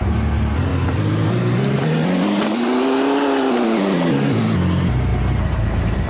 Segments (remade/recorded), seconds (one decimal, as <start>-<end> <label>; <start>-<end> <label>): 0.0-5.1 recorded; 5.1-6.1 remade